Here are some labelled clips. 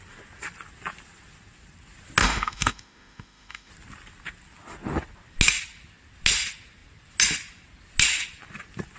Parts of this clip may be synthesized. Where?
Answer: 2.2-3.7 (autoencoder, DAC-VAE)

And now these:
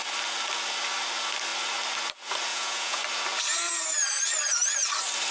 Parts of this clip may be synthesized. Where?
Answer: 2.5-3.0 (vocoder, Vocos)

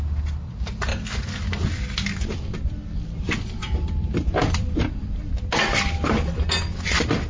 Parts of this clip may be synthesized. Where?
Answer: 0.9-1.6 (vocoder, BigVGAN v2); 2.3-4.9